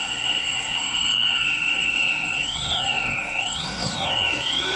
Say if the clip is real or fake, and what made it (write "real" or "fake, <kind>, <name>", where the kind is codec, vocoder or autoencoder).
fake, codec, SNAC